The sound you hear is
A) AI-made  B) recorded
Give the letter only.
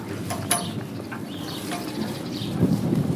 A